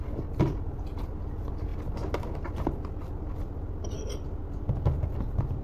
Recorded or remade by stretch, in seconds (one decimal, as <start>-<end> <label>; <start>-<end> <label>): 0.0-5.6 recorded